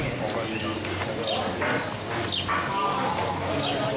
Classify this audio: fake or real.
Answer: real